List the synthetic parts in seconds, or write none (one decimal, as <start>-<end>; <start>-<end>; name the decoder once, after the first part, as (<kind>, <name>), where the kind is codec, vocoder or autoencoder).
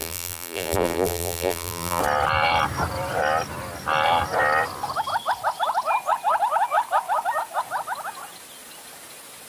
0.0-2.0 (vocoder, BigVGAN v2)